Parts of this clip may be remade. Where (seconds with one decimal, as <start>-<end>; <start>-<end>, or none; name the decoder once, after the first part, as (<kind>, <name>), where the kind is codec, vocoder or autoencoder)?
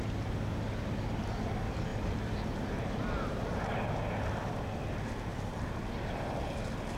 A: 1.9-3.8 (vocoder, BigVGAN v2); 5.3-5.9